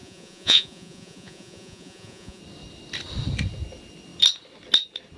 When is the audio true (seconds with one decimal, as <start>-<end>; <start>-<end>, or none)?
2.4-5.2